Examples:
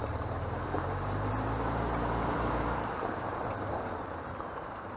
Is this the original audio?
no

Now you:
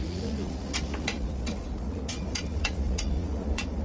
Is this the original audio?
no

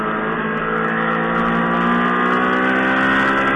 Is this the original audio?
yes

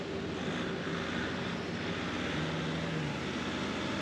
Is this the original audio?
yes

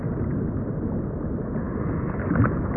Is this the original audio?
yes